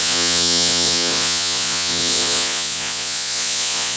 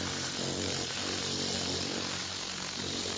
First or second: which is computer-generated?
first